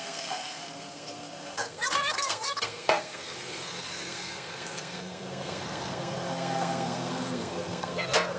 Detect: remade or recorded remade